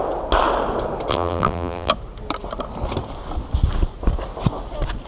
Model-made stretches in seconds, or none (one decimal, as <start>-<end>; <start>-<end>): 1.1-1.9